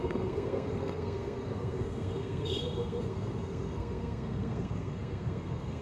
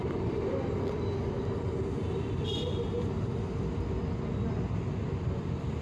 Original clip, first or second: second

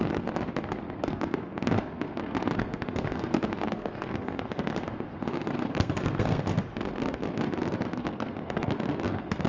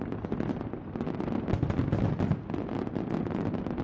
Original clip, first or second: second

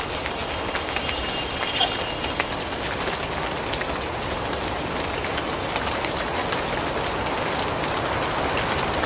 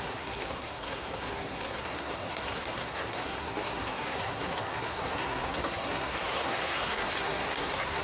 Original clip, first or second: first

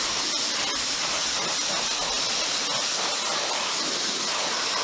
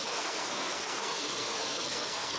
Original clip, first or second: first